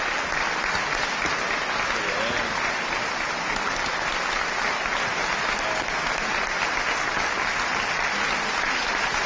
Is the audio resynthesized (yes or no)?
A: no